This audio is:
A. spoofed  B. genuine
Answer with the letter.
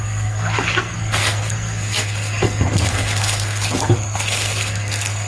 A